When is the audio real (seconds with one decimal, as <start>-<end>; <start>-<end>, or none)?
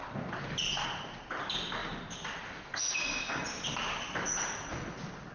0.0-5.3